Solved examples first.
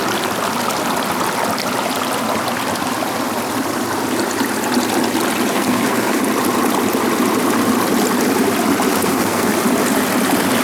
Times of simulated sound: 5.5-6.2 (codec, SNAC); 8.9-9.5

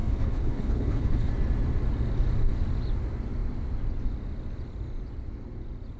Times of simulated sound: 0.0-1.3 (codec, HILCodec)

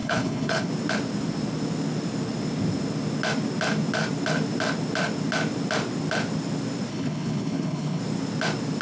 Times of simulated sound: 0.0-0.7 (codec, HILCodec); 6.9-8.0

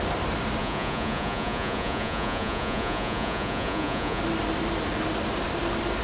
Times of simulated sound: 0.6-4.2 (vocoder, Vocos)

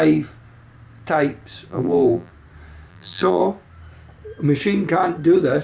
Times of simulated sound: 1.7-2.3 (vocoder, BigVGAN v2); 2.9-3.4

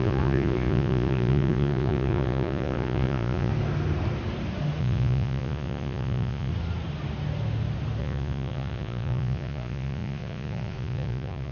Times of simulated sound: 0.0-3.5 (vocoder, Vocos); 4.8-6.5; 8.0-11.5

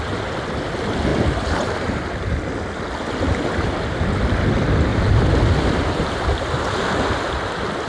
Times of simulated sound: 1.1-2.4 (vocoder, BigVGAN v2); 4.9-7.3